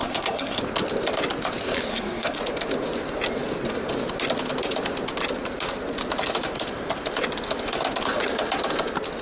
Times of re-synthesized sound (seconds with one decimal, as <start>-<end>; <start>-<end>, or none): 0.0-0.6; 1.9-2.4